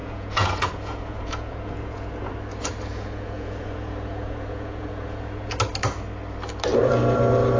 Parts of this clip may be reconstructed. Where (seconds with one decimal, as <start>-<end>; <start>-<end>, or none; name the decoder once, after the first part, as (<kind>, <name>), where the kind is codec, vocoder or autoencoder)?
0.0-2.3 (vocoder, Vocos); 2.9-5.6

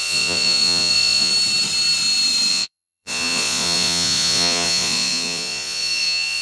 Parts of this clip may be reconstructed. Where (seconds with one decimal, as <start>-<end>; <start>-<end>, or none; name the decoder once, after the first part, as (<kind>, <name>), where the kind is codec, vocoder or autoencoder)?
0.0-1.3 (vocoder, Vocos); 2.5-6.4

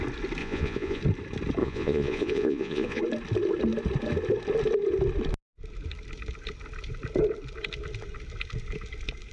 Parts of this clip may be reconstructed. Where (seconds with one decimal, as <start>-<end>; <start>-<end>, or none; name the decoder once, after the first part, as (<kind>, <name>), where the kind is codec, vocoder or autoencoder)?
0.4-1.0 (vocoder, Vocos); 1.6-3.0

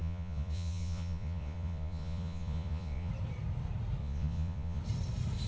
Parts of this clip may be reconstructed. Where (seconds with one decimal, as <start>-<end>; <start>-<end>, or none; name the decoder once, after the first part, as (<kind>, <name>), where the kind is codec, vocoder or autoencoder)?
0.0-3.1 (vocoder, Vocos); 4.0-4.8

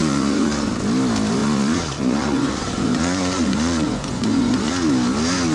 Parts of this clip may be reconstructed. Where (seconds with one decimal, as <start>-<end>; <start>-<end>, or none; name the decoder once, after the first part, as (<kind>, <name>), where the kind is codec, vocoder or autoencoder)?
0.0-0.7 (vocoder, Vocos); 1.4-4.7

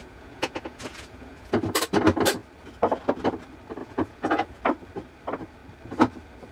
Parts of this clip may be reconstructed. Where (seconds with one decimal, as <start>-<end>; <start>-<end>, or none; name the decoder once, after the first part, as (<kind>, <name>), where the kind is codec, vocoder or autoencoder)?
0.0-1.5 (vocoder, Vocos); 3.8-4.6

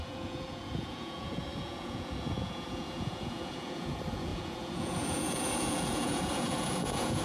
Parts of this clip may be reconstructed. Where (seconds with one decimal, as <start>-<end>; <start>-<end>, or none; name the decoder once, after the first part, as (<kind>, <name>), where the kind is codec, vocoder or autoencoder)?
0.0-7.2 (vocoder, Vocos)

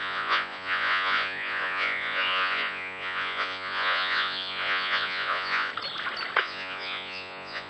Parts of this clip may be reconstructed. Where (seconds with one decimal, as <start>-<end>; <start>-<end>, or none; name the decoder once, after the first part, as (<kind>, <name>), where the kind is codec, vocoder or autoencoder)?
0.0-5.7 (vocoder, Vocos); 6.4-7.7